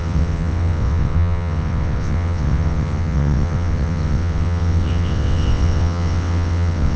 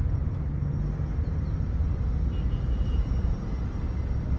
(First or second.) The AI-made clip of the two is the first